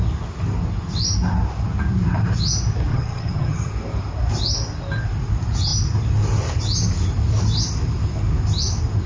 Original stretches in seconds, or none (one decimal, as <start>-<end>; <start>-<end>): 0.0-2.9; 3.7-9.1